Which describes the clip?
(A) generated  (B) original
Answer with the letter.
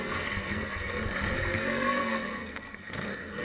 A